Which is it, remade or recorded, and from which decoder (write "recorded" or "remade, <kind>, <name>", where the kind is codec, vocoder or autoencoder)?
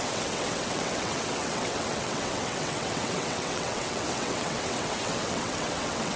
remade, vocoder, WaveNeXt